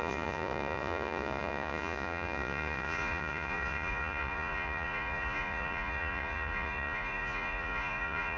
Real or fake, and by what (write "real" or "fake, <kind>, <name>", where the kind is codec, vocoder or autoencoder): fake, vocoder, Vocos